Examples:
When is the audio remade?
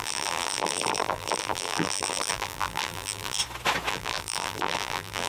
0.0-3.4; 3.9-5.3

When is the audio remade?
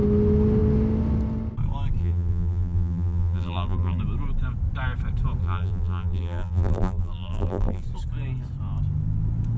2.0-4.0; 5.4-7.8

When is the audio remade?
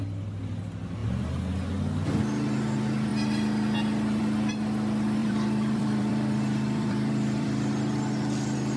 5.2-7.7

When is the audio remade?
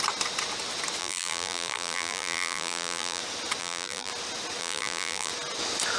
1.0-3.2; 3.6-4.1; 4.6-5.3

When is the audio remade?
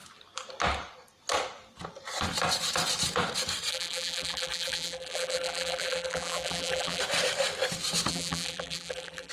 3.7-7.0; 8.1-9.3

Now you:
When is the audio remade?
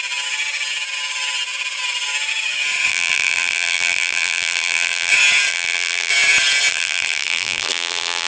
2.9-5.1; 5.5-6.1; 6.7-8.3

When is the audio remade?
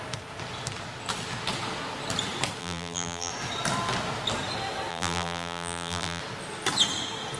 2.6-3.3; 4.9-6.2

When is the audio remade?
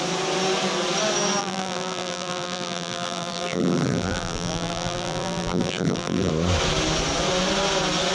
1.4-6.3